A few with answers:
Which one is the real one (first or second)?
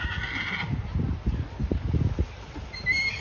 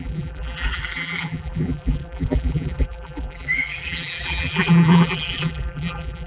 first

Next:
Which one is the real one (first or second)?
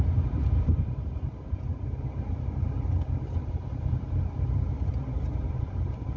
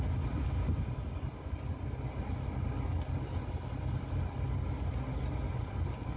second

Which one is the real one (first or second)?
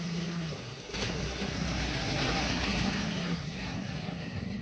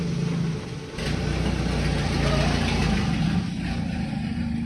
second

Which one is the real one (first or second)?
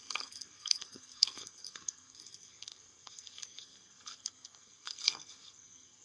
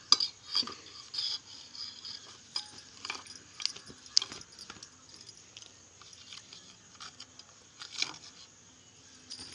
second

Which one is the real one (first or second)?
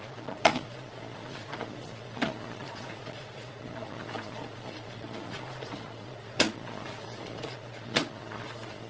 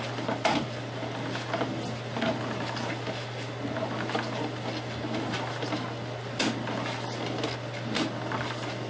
second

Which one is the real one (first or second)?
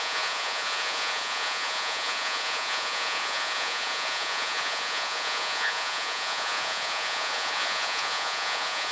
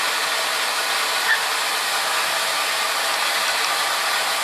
second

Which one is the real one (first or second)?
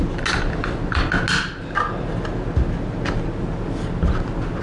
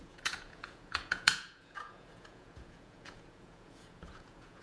first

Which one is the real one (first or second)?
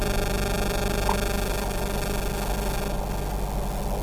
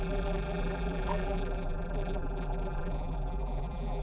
first